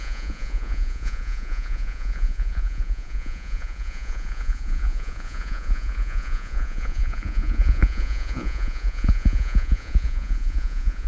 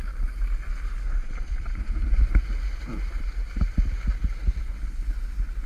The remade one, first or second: first